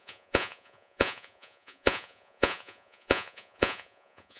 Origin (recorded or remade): remade